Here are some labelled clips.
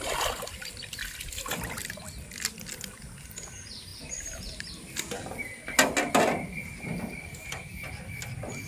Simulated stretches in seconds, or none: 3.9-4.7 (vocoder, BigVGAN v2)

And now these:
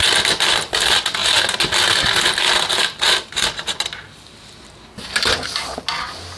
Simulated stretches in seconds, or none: none

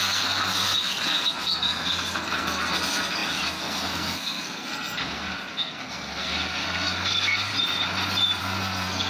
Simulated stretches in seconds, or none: 0.0-7.5 (codec, SNAC); 8.4-9.1

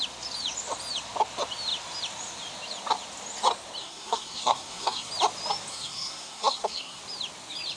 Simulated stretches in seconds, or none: 3.8-5.1 (codec, SNAC); 5.7-7.0

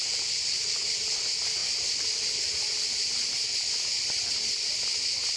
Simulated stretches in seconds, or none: none

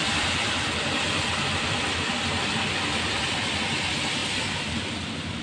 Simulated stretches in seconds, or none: 0.0-3.2 (vocoder, BigVGAN v2)